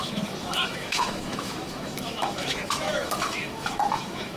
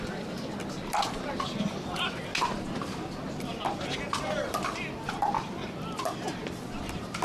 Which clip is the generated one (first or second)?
first